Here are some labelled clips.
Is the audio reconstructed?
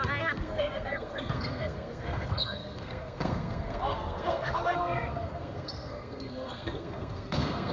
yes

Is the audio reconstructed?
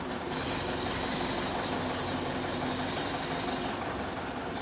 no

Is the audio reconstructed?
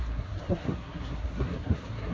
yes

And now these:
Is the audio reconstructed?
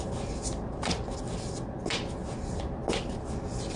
no